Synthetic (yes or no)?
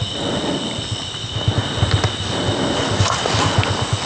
no